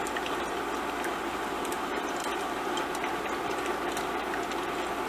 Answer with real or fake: real